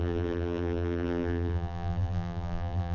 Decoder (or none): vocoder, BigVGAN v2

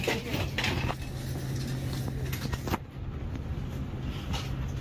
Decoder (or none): none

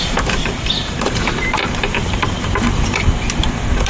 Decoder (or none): vocoder, BigVGAN v2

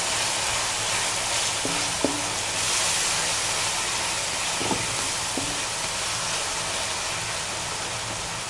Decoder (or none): none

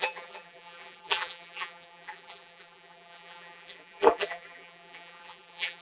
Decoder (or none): vocoder, BigVGAN v2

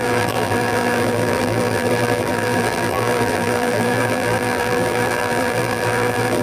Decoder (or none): vocoder, BigVGAN v2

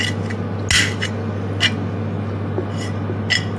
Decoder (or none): none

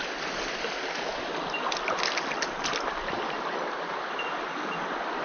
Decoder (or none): none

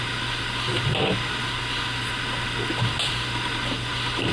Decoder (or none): none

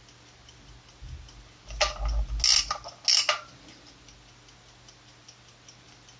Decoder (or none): none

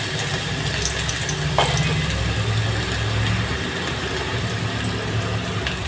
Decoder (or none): none